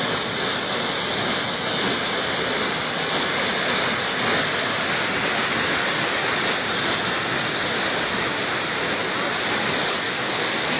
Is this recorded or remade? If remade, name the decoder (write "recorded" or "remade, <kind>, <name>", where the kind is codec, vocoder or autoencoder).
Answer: recorded